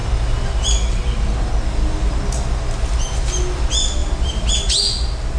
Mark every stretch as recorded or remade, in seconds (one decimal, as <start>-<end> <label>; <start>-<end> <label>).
0.0-4.0 recorded; 4.0-4.5 remade; 4.5-5.4 recorded